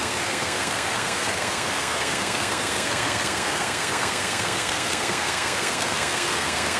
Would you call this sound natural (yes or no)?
no